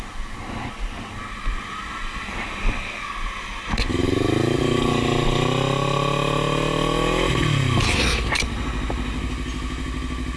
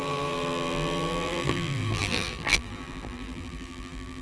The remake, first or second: second